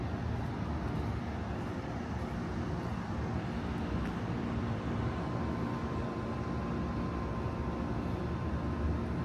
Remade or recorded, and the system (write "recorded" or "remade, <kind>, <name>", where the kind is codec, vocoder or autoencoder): recorded